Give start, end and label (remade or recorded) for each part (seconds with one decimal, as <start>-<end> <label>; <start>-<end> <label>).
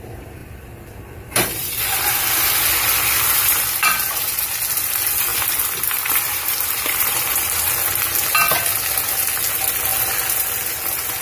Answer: 0.0-0.4 recorded; 0.4-2.1 remade; 2.1-5.3 recorded; 5.3-7.6 remade; 7.6-11.2 recorded